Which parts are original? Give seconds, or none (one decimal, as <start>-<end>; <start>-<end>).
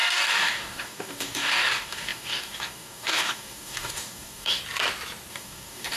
4.6-5.3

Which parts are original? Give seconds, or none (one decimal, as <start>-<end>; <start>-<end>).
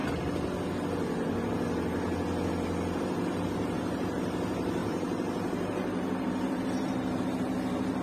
0.0-3.0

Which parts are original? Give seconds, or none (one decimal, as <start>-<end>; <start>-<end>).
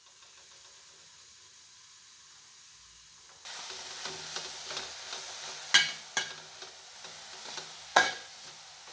0.0-7.9; 8.5-8.9